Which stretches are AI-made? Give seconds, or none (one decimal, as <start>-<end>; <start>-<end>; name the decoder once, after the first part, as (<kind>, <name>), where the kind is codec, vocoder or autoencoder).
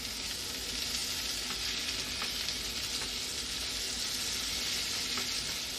none